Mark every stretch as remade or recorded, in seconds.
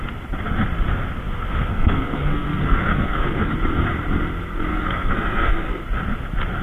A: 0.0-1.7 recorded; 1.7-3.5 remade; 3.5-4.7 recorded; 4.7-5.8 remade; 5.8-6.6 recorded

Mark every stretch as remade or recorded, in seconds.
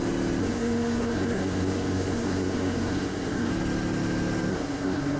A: 0.0-0.4 recorded; 0.4-3.5 remade; 3.5-4.5 recorded; 4.5-5.2 remade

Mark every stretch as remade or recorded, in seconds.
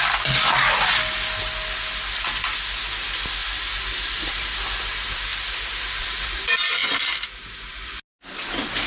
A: 0.0-8.9 recorded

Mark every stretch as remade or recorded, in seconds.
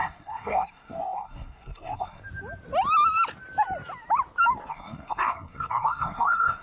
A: 0.0-2.2 remade; 2.2-4.7 recorded; 4.7-6.6 remade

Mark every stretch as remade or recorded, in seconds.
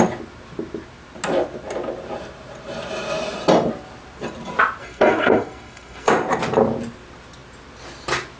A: 0.0-4.8 recorded; 4.8-6.1 remade; 6.1-8.4 recorded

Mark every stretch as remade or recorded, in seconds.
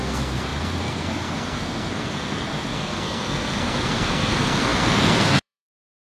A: 0.0-6.0 remade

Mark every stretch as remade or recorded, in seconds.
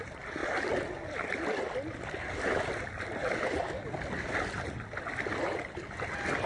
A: 0.0-6.5 recorded